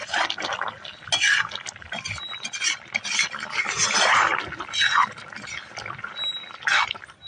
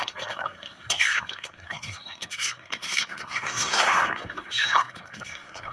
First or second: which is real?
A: first